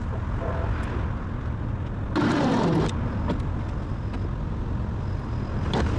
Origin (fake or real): real